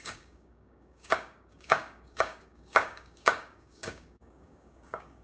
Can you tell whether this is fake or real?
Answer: fake